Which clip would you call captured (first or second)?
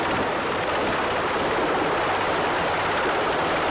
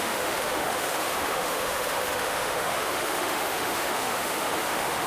first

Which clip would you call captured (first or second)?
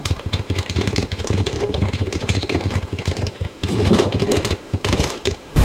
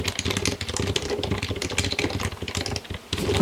second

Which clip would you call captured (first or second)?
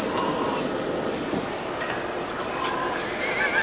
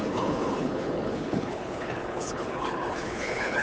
first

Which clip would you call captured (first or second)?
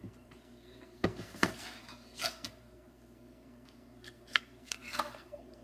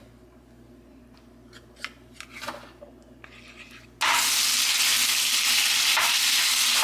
second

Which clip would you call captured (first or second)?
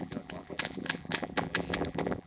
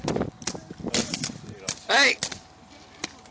second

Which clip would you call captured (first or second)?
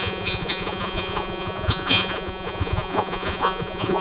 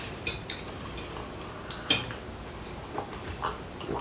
second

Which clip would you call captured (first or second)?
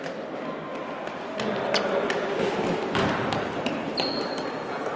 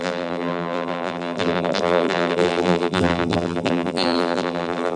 first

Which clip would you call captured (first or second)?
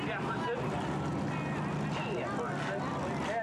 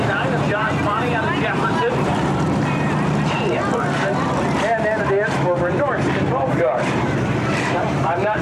first